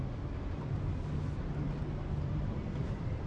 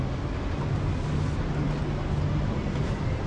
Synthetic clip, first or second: first